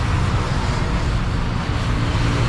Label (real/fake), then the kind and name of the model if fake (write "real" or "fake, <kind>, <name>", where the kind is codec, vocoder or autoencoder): real